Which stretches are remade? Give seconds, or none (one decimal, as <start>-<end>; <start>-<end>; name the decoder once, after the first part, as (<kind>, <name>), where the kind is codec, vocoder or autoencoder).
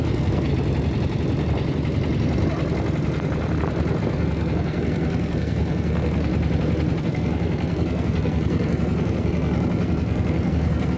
0.0-0.5 (codec, SNAC); 4.0-6.3; 7.0-11.0